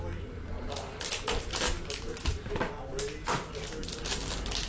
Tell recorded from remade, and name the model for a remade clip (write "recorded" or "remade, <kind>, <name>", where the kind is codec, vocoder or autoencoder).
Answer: recorded